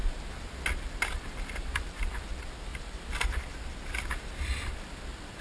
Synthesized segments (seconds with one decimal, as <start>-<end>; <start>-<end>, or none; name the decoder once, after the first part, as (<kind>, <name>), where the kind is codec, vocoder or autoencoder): none